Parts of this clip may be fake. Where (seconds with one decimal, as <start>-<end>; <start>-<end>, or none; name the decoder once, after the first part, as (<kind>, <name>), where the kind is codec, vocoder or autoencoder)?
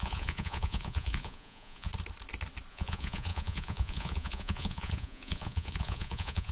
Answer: 0.0-1.9 (vocoder, Vocos); 2.7-6.5